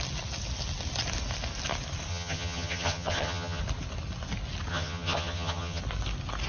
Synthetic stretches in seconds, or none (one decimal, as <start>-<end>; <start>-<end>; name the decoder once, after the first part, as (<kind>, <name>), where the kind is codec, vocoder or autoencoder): 2.1-3.6 (vocoder, HiFi-GAN); 4.7-5.8